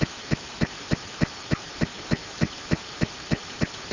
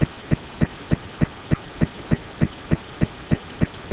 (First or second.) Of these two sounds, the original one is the second